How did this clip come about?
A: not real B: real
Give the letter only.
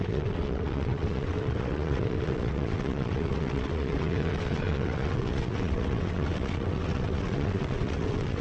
A